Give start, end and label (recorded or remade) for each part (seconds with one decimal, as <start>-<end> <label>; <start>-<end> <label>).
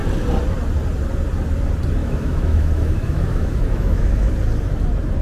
0.0-2.0 recorded; 2.0-4.3 remade; 4.3-5.2 recorded